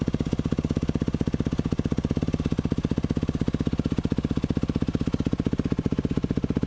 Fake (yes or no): no